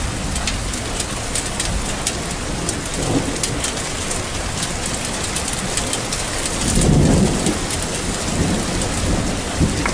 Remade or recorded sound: recorded